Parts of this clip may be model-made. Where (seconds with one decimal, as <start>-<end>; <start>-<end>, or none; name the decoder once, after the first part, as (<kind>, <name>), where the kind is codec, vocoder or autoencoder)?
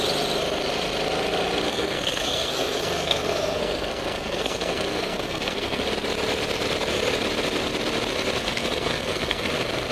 1.7-5.8 (codec, SNAC); 8.4-9.5